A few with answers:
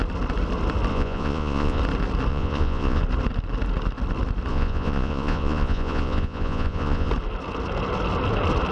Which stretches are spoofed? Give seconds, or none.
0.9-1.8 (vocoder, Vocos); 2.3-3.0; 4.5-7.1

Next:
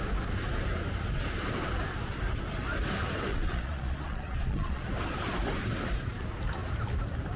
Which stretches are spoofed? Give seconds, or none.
3.3-4.8 (vocoder, Vocos)

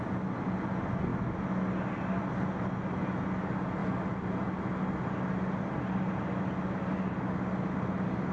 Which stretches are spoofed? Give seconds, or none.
none

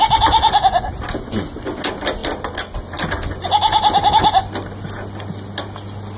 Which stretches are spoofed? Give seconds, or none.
none

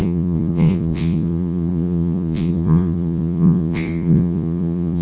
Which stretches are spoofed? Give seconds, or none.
0.0-5.0 (vocoder, Vocos)

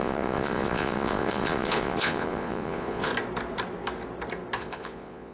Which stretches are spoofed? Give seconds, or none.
0.0-3.1 (vocoder, Vocos); 4.6-5.3

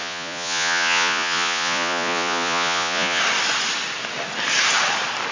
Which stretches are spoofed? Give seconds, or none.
0.0-3.2 (vocoder, Vocos)

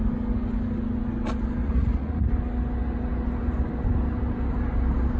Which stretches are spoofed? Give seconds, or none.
1.6-2.3 (vocoder, Vocos)